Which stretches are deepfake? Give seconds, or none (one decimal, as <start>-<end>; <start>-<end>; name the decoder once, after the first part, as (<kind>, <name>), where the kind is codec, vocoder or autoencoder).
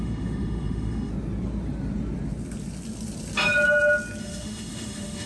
0.0-1.1 (autoencoder, DAC-VAE); 4.2-5.3